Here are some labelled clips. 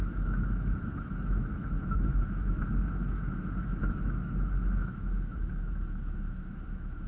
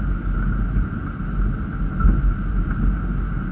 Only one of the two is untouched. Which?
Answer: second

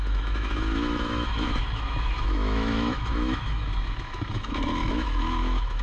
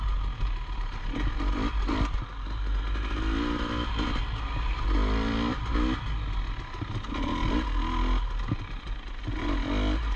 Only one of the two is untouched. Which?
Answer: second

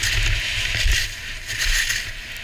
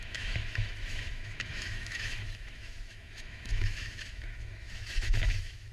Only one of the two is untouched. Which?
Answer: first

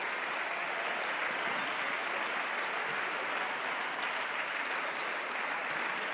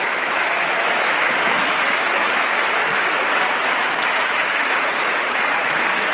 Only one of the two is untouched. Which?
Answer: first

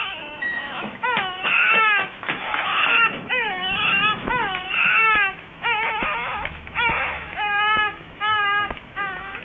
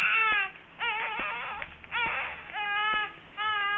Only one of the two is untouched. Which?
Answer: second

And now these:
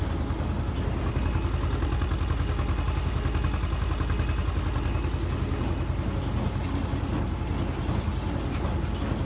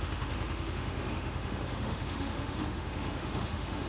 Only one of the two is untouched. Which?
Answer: first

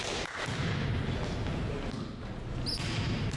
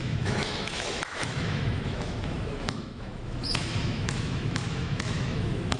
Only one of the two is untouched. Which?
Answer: first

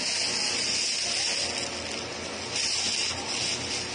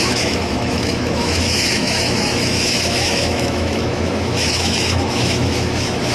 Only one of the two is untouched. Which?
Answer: first